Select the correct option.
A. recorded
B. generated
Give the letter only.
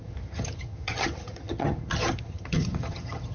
B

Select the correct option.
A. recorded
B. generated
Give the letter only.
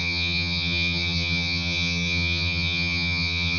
B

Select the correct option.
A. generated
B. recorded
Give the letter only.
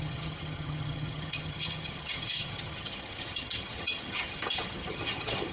A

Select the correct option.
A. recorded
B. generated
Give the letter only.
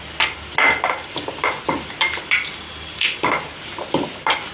A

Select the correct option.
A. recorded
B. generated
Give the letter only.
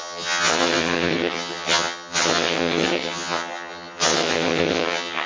B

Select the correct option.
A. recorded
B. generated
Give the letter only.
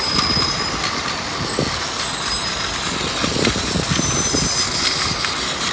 A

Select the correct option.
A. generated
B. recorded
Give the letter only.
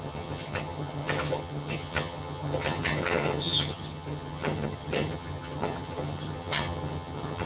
A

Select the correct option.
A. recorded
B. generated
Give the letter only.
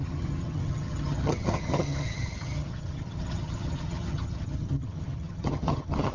B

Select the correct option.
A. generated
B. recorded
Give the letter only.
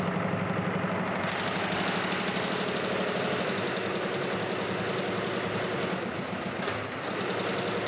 B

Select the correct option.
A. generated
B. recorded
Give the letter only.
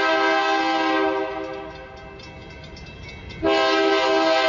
B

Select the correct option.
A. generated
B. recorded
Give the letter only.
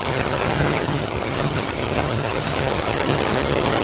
A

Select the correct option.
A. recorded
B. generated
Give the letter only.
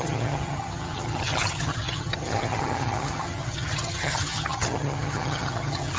B